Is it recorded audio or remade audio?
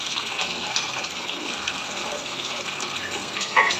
remade